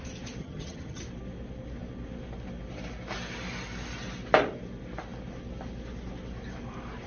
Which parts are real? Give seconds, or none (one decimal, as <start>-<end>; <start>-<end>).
0.0-0.4; 1.0-7.1